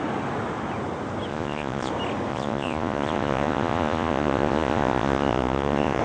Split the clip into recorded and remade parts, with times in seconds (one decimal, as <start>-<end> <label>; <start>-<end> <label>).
0.0-1.3 recorded; 1.3-1.9 remade; 1.9-2.3 recorded; 2.3-6.0 remade